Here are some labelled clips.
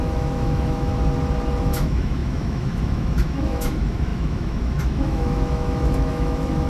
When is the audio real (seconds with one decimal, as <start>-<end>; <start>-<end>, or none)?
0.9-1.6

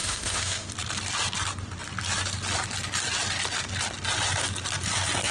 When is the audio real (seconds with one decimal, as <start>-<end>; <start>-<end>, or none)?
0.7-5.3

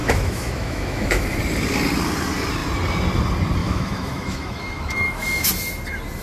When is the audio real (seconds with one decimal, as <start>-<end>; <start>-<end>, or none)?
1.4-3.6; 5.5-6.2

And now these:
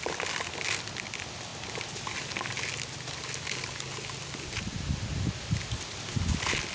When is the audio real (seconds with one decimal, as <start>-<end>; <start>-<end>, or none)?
0.0-6.7

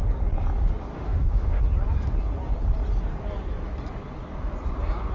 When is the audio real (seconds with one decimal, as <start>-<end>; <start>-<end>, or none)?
0.0-0.9; 1.6-5.1

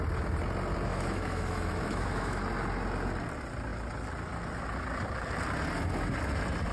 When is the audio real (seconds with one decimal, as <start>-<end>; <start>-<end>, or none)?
0.0-0.9; 2.4-6.7

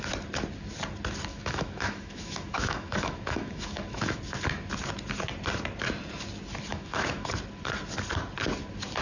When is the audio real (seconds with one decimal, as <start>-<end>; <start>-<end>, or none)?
0.0-1.3; 4.2-6.7; 7.3-9.0